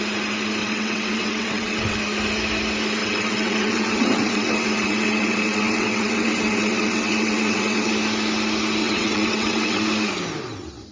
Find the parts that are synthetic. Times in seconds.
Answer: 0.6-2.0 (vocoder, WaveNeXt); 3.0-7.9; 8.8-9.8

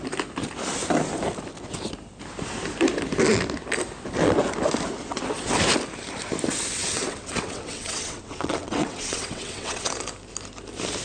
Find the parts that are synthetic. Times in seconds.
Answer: 6.8-9.9 (vocoder, WaveNeXt)